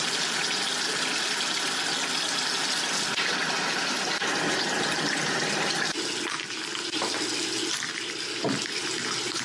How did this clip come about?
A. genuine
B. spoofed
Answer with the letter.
A